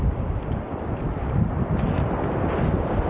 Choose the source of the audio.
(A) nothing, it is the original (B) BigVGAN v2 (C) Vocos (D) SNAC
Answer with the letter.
A